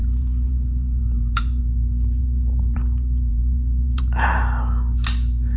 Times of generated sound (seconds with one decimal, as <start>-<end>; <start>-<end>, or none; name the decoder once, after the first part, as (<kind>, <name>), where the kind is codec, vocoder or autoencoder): 0.0-1.6 (vocoder, BigVGAN v2); 2.2-4.4